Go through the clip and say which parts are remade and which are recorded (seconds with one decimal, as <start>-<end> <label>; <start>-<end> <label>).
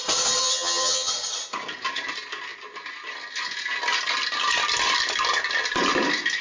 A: 0.0-0.4 recorded; 0.4-1.1 remade; 1.1-6.4 recorded